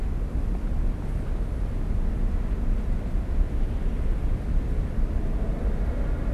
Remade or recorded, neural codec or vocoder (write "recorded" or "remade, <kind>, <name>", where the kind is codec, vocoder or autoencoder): recorded